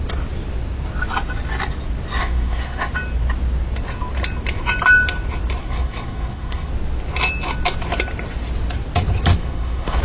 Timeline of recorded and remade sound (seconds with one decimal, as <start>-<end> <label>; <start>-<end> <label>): 0.0-2.2 recorded; 2.2-2.9 remade; 2.9-5.6 recorded; 5.6-6.7 remade; 6.7-9.4 recorded; 9.4-10.0 remade